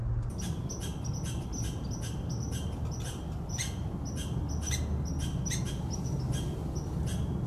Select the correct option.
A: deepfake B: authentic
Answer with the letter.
B